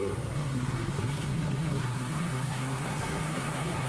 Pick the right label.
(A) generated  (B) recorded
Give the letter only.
A